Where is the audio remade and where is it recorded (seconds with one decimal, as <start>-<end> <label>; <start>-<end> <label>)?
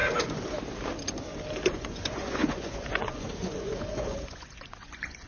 0.0-1.7 recorded; 1.7-5.3 remade